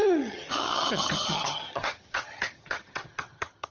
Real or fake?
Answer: fake